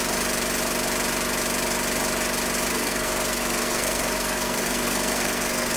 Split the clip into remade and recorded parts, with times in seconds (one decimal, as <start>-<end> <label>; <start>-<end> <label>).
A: 0.0-2.7 recorded; 2.7-5.8 remade